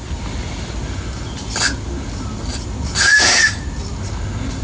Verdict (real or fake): real